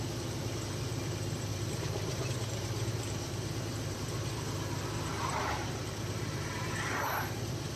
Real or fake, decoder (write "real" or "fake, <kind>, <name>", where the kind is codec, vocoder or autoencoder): fake, vocoder, BigVGAN v2